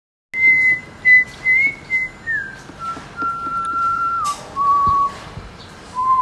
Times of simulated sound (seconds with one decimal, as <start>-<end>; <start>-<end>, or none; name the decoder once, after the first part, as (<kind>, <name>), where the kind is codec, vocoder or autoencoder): 3.5-6.2 (vocoder, BigVGAN v2)